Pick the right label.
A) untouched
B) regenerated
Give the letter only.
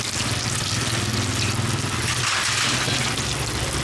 A